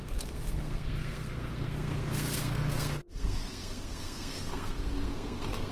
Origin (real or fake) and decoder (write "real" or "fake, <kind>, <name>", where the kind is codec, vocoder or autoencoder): fake, codec, SNAC